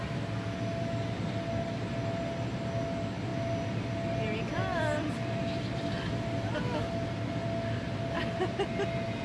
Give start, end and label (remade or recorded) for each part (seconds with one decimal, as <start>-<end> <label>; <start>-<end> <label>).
0.0-9.2 recorded